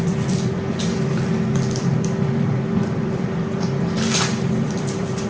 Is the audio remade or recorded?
remade